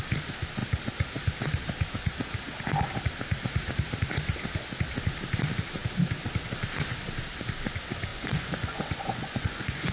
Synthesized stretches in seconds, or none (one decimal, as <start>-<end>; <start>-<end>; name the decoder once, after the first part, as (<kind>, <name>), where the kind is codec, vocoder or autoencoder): 8.1-9.9 (vocoder, Vocos)